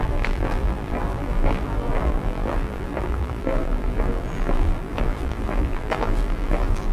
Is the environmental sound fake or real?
fake